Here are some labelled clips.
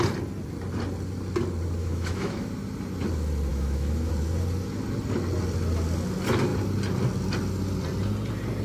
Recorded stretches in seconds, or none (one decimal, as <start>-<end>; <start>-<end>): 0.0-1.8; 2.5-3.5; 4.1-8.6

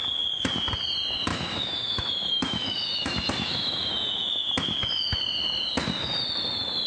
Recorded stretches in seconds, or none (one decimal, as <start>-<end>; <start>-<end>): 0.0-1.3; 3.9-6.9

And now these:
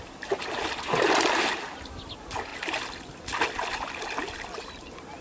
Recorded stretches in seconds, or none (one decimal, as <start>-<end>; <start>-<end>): 0.0-5.2

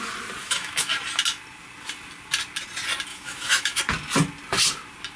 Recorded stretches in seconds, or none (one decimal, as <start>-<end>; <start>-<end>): 0.0-0.4; 0.9-3.1; 3.8-5.2